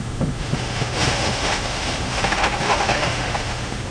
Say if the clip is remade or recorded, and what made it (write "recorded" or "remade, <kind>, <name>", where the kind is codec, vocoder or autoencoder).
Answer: remade, autoencoder, DAC-VAE